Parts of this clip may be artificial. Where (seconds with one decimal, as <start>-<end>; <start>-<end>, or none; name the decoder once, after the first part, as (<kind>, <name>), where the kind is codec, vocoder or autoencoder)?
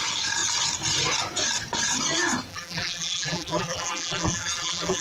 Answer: 2.5-5.0 (vocoder, BigVGAN v2)